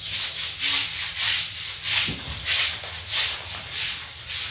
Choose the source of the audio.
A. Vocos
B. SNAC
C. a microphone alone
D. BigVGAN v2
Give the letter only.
C